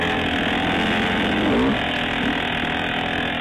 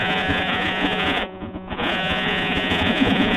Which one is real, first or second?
first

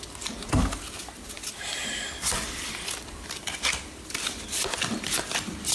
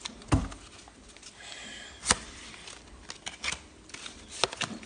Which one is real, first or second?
second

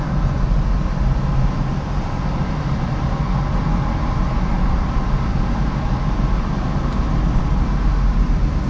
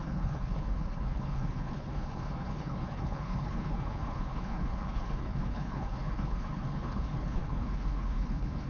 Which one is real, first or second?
first